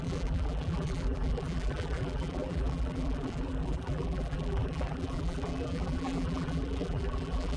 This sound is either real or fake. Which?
fake